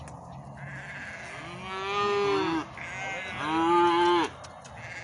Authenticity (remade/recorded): recorded